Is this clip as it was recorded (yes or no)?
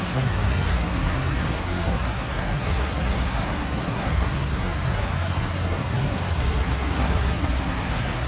no